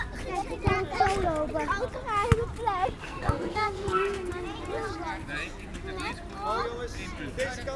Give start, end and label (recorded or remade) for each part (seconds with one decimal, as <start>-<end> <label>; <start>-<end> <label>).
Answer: 0.0-3.0 recorded; 3.0-4.3 remade; 4.3-7.8 recorded